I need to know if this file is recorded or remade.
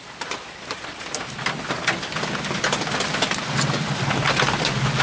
recorded